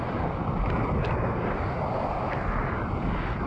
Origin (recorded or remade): recorded